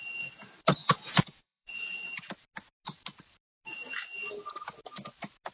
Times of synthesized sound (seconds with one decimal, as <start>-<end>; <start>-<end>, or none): 0.8-2.1